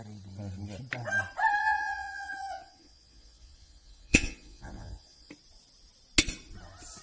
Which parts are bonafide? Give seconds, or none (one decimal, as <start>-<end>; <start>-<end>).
0.0-1.6; 5.3-7.0